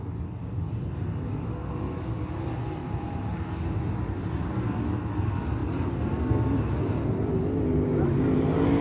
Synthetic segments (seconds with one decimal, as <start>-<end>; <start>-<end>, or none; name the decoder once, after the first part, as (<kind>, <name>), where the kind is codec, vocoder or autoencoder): 2.8-4.5 (vocoder, BigVGAN v2); 5.6-6.2